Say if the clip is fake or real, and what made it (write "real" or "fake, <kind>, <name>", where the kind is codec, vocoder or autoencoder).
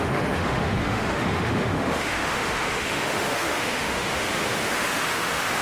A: fake, autoencoder, DAC-VAE